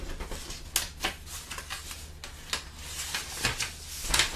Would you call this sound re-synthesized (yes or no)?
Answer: no